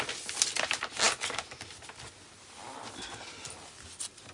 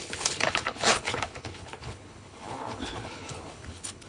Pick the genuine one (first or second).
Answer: first